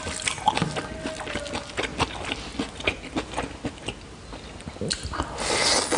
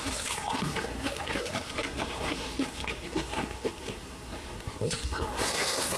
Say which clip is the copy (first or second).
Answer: second